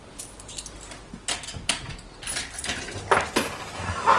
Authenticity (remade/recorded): recorded